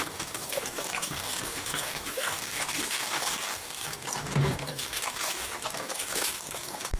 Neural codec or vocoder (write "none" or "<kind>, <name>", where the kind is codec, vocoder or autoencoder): codec, DAC